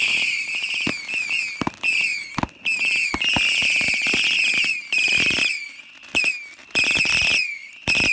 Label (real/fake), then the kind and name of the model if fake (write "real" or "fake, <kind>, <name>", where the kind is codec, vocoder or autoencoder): real